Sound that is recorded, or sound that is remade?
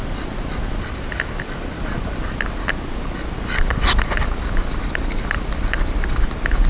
recorded